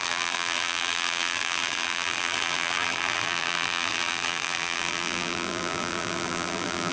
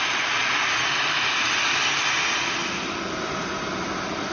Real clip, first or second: second